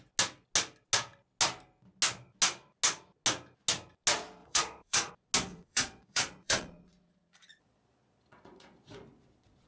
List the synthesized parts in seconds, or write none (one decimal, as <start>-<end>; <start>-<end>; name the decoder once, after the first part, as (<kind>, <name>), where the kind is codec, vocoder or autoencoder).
4.4-5.1 (vocoder, Vocos); 5.5-9.7